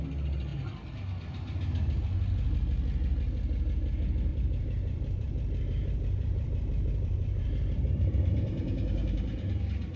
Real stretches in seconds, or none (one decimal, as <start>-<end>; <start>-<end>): 0.0-4.3; 9.6-10.0